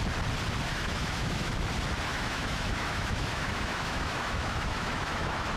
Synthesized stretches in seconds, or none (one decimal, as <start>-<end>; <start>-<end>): 0.7-1.5; 2.1-5.6